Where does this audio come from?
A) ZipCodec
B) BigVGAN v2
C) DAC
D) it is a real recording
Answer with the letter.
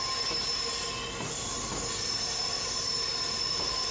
D